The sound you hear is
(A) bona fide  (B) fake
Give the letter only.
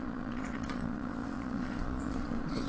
B